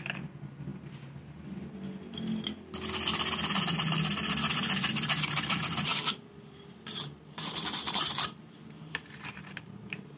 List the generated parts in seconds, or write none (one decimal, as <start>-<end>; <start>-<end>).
5.9-10.2